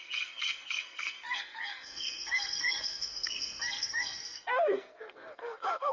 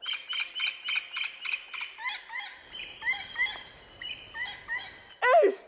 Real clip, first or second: second